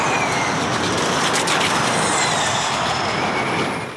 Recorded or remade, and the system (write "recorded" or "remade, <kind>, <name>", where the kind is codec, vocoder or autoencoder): remade, vocoder, BigVGAN v2